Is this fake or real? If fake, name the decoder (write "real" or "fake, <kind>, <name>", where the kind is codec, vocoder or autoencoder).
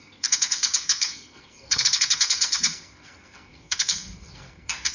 fake, codec, SNAC